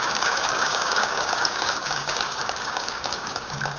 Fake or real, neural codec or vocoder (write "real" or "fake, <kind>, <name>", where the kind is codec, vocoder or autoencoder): fake, codec, DAC